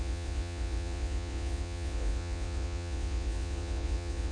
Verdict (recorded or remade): remade